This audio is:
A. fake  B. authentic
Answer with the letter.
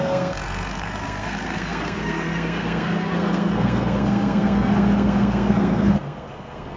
A